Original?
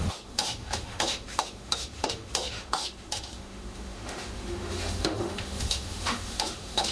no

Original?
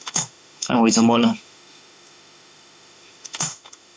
no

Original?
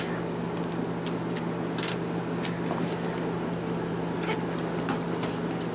yes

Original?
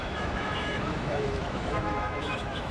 no